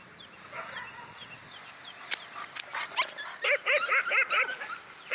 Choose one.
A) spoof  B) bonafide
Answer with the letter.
B